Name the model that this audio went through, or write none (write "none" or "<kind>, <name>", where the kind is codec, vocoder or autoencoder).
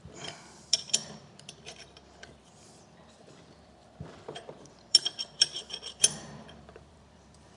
vocoder, BigVGAN v2